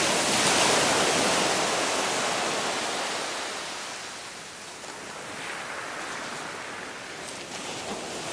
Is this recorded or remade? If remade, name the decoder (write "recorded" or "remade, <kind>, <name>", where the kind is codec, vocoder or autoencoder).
recorded